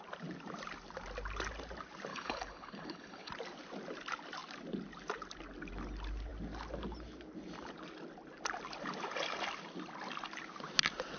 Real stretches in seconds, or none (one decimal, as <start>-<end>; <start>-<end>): 0.0-2.1; 3.3-11.2